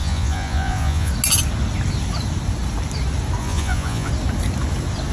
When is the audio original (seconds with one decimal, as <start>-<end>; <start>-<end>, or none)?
1.1-3.4; 4.1-5.1

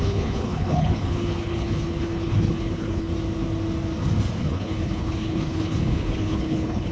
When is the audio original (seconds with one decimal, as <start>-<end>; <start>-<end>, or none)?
3.1-4.4